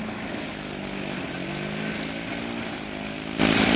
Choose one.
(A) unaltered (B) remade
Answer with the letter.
A